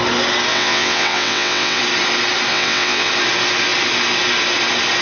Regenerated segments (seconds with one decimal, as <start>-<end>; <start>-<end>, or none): 0.5-1.8; 2.5-3.1